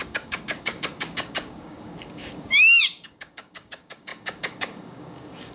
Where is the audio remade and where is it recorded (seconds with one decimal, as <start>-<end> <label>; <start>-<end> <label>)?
0.0-5.5 remade